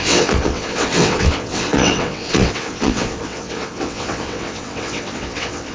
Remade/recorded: remade